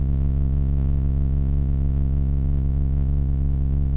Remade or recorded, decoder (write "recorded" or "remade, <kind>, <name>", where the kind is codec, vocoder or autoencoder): remade, vocoder, Vocos